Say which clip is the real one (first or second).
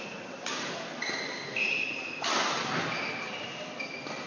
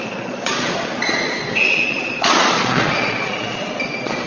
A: first